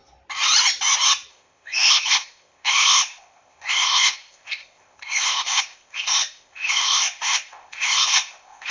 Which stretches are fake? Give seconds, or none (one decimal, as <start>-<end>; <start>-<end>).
1.3-8.7